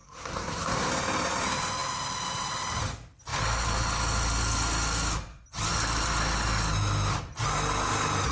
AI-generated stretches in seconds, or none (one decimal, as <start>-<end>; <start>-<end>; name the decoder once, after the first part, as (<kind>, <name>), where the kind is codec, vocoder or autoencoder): 0.0-0.9 (codec, SNAC)